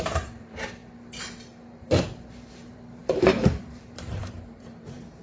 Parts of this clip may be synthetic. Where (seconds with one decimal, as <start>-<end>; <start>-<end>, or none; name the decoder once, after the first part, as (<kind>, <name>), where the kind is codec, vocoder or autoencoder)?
0.0-0.8 (vocoder, BigVGAN v2); 2.0-5.2